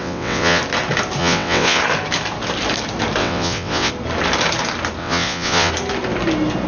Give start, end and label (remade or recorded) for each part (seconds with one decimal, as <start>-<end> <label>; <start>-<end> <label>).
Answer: 0.0-0.6 remade; 0.6-1.2 recorded; 1.2-1.8 remade; 1.8-3.2 recorded; 3.2-3.9 remade; 3.9-5.0 recorded; 5.0-5.7 remade; 5.7-6.7 recorded